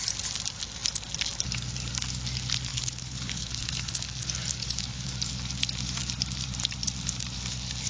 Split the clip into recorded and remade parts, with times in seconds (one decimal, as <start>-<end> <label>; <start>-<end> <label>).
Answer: 0.0-2.7 recorded; 2.7-3.9 remade; 3.9-4.6 recorded; 4.6-5.1 remade; 5.1-7.9 recorded